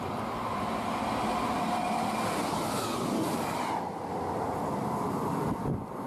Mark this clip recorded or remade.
recorded